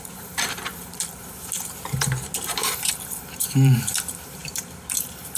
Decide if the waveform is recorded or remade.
remade